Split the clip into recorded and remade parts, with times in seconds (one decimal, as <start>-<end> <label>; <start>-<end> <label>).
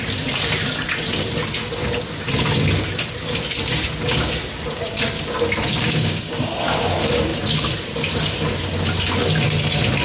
0.0-5.7 recorded; 5.7-6.2 remade; 6.2-10.0 recorded